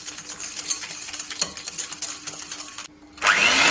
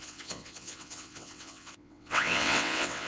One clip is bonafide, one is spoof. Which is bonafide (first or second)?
first